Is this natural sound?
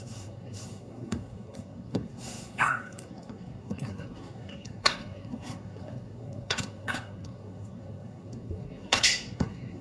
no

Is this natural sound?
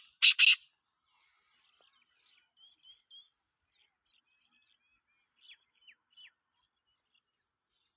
yes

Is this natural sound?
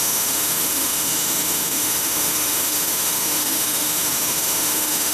no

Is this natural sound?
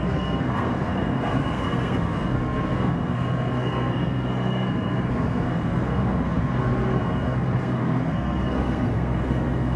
no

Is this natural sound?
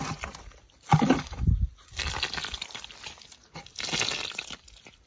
yes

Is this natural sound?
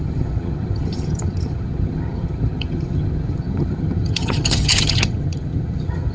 no